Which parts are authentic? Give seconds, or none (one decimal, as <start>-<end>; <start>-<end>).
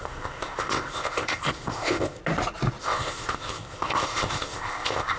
2.2-2.8